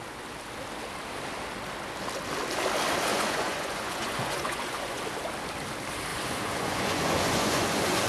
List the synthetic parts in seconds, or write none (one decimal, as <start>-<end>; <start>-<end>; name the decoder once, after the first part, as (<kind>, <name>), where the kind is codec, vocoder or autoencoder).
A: 3.1-5.0 (vocoder, Vocos); 6.1-8.1